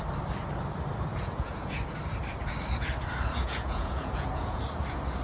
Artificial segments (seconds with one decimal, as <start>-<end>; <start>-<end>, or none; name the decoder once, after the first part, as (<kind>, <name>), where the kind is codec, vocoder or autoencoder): 1.1-1.7 (vocoder, Vocos); 3.4-4.6